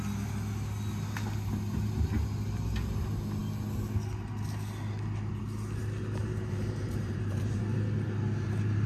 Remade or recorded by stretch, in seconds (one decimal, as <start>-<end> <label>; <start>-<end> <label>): 0.0-6.2 recorded; 6.2-7.6 remade; 7.6-8.9 recorded